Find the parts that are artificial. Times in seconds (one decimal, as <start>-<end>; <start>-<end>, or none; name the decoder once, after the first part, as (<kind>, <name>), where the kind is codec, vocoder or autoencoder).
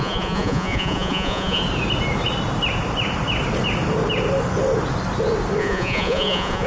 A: 0.0-1.6 (vocoder, Vocos); 5.6-6.7